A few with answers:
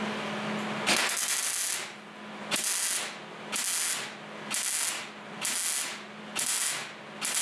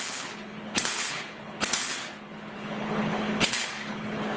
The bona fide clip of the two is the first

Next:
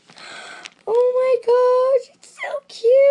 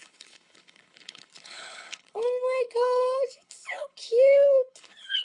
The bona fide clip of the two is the first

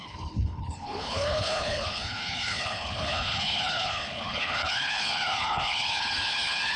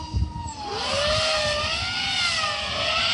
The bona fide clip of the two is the second